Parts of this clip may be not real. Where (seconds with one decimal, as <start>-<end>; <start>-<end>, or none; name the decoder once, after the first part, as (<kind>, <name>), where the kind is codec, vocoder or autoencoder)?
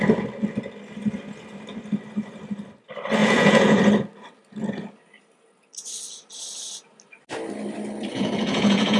3.2-3.9 (vocoder, Vocos); 8.1-9.0